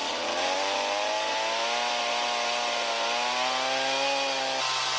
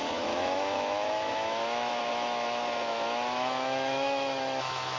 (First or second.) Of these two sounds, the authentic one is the first